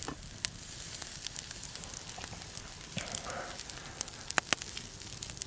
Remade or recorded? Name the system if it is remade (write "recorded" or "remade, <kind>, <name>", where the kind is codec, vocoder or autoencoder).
recorded